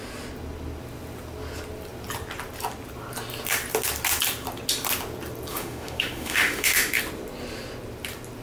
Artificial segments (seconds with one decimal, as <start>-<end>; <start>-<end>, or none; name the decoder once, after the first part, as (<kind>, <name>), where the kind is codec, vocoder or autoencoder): 5.5-7.0 (autoencoder, DAC-VAE)